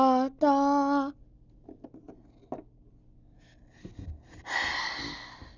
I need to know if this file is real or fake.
real